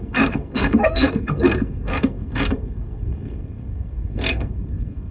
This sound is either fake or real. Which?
fake